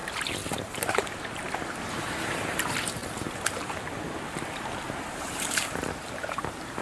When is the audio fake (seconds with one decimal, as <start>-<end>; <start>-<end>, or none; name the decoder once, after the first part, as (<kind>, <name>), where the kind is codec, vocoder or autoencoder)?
0.6-3.0 (vocoder, BigVGAN v2); 5.1-6.8